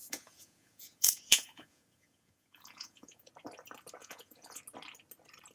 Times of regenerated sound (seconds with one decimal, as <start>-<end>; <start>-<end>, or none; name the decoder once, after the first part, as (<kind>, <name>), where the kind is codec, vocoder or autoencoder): 0.0-3.3 (vocoder, Vocos); 4.0-4.6